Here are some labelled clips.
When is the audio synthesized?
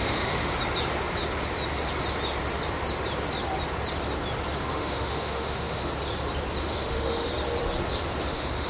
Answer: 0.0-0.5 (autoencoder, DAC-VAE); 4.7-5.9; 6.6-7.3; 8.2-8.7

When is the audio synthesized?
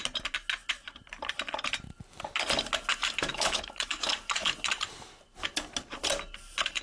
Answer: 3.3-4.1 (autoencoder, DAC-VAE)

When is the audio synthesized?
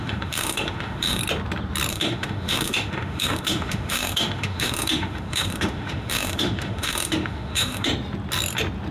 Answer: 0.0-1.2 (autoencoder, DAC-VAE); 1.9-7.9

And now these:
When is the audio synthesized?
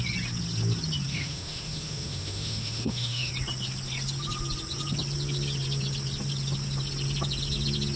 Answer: 1.1-3.3 (autoencoder, DAC-VAE)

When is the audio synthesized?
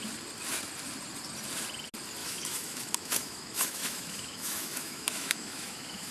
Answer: 2.2-6.1 (autoencoder, DAC-VAE)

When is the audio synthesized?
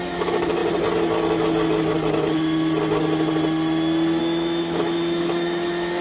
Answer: 0.0-0.6 (autoencoder, DAC-VAE); 4.2-6.0